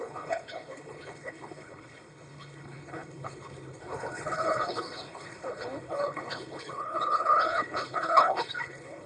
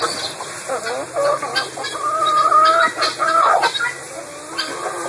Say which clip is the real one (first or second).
second